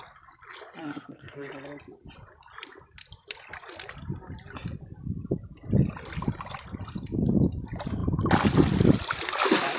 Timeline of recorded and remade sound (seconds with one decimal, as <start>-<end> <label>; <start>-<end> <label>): 0.0-0.8 recorded; 0.8-1.5 remade; 1.5-9.8 recorded